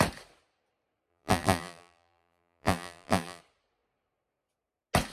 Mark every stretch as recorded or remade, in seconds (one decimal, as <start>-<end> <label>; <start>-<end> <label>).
0.0-1.1 recorded; 1.1-3.4 remade; 3.4-5.1 recorded